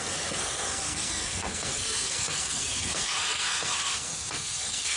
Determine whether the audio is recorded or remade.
remade